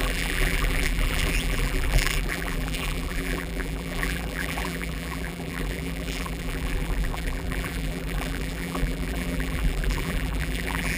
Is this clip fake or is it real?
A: fake